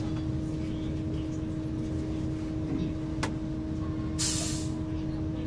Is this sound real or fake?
real